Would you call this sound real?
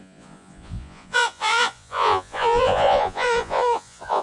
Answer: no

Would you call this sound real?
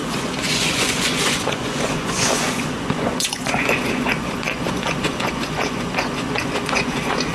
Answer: no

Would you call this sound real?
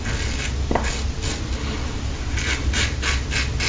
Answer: yes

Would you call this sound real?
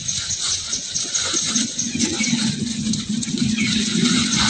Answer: no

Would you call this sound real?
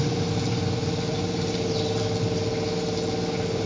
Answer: yes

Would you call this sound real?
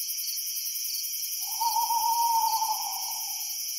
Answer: no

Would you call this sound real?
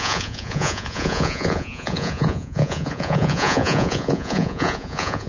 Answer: no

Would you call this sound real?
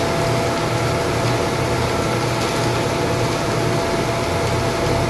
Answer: yes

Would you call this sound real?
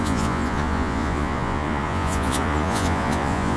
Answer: no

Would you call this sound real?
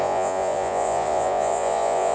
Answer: no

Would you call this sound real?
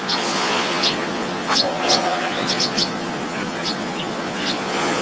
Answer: no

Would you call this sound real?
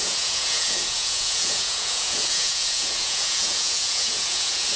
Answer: no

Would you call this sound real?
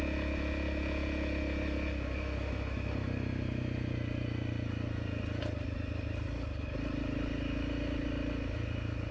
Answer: yes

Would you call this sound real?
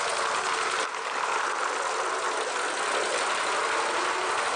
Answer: yes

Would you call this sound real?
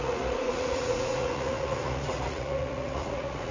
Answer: no